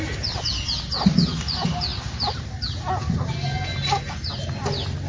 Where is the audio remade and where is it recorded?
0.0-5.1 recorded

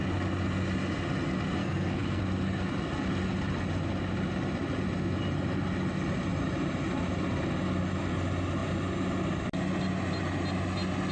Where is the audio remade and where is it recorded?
0.0-1.6 recorded; 1.6-2.2 remade; 2.2-11.1 recorded

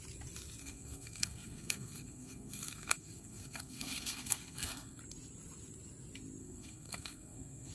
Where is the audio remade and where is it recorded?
0.0-0.6 recorded; 0.6-5.0 remade; 5.0-6.4 recorded; 6.4-7.7 remade

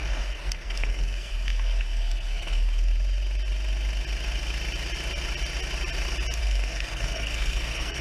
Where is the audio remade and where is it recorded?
0.0-2.9 remade; 2.9-6.4 recorded; 6.4-8.0 remade

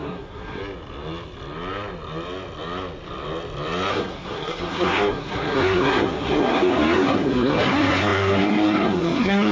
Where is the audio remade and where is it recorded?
0.0-0.6 remade; 0.6-3.9 recorded; 3.9-9.5 remade

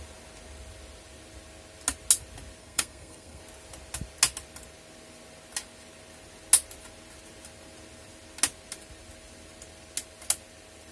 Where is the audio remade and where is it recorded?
0.0-2.6 recorded; 2.6-3.4 remade; 3.4-10.9 recorded

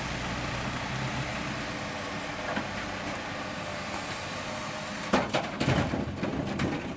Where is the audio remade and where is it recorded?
0.0-7.0 recorded

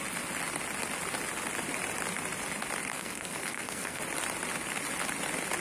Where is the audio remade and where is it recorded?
0.0-2.9 recorded; 2.9-4.0 remade; 4.0-5.6 recorded